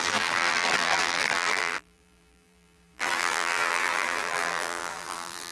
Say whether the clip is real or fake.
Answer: fake